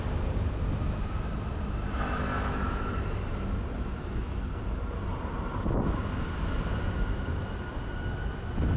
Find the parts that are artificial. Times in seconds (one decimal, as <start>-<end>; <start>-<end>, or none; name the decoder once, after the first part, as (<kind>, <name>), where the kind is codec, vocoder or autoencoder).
4.0-4.6 (codec, SNAC)